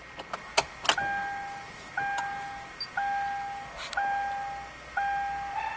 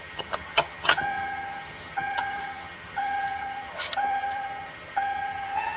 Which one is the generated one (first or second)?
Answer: second